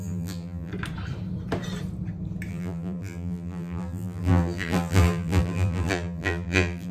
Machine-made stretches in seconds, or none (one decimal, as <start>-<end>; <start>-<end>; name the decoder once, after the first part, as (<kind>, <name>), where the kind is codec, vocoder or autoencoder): 0.0-0.7 (vocoder, BigVGAN v2); 2.5-6.9